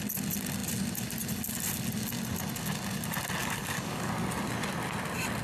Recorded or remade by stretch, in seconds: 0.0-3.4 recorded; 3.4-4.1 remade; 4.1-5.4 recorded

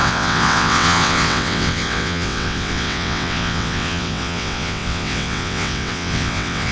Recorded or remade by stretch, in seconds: 0.0-6.7 remade